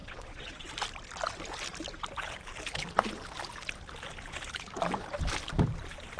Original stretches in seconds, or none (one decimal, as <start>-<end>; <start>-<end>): 0.7-6.2